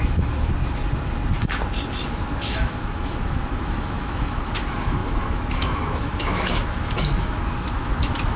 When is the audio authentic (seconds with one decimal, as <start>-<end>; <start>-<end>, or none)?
0.5-2.0